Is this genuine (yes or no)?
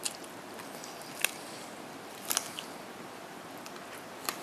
yes